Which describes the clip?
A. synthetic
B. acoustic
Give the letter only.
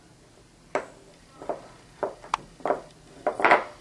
B